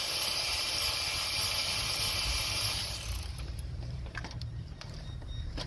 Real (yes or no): no